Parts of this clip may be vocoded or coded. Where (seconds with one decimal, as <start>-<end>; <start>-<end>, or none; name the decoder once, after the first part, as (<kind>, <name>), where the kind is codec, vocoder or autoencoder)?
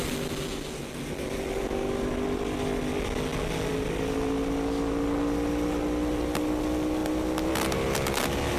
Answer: none